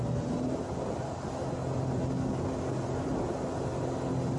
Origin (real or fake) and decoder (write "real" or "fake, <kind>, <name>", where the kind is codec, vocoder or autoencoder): real